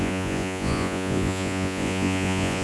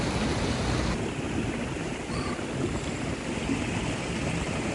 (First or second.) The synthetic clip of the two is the first